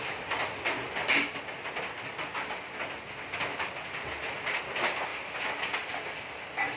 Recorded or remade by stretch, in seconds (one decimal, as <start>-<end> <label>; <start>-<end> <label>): 0.0-5.1 recorded; 5.1-5.6 remade; 5.6-6.8 recorded